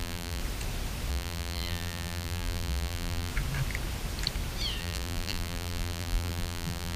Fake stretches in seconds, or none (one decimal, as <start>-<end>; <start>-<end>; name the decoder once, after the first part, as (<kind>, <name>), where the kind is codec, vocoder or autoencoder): 0.0-0.4 (vocoder, BigVGAN v2); 1.1-3.3; 4.8-7.0